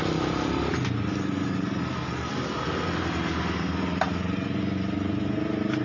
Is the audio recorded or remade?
recorded